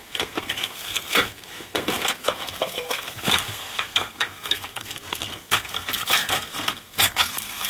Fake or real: fake